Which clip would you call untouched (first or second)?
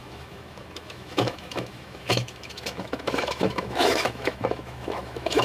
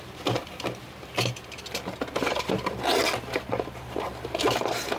second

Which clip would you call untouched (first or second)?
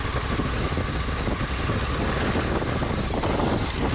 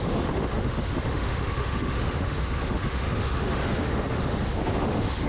first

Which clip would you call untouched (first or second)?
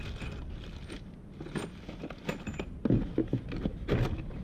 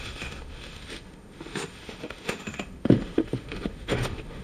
first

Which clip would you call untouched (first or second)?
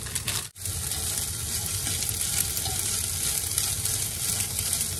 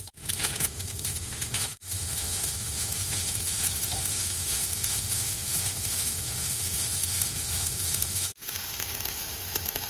first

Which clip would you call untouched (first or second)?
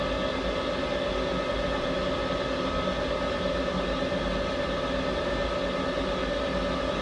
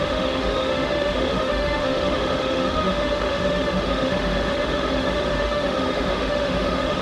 first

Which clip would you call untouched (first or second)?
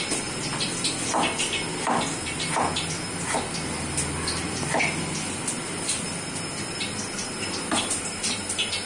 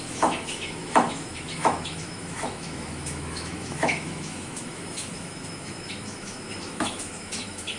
first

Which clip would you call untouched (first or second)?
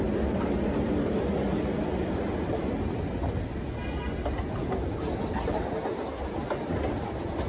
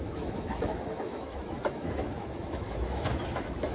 first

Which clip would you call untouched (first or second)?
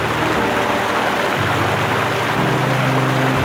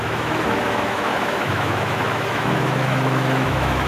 first